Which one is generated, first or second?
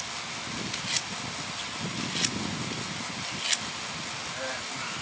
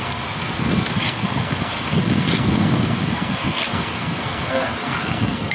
second